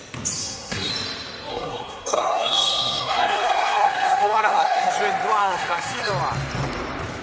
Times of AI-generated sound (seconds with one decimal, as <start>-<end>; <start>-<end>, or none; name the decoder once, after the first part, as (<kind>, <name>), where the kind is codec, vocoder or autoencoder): 0.4-0.9 (codec, SNAC); 1.5-4.9; 5.4-6.1